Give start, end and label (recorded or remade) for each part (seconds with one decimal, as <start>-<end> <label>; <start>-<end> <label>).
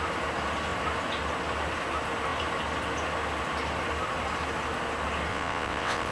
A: 0.0-5.3 recorded; 5.3-6.1 remade